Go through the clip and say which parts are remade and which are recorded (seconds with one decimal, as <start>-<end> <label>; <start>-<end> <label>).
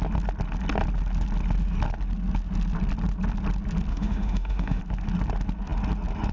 0.0-3.9 recorded; 3.9-4.8 remade; 4.8-6.3 recorded